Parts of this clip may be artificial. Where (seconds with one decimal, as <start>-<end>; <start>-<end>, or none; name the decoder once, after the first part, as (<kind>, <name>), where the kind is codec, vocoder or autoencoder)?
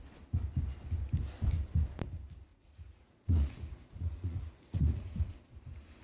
2.5-5.3 (vocoder, Vocos)